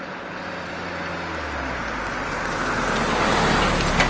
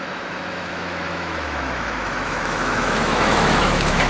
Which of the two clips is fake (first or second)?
second